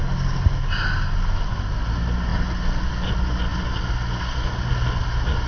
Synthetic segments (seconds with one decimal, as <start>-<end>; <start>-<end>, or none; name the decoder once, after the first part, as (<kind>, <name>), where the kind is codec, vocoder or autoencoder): none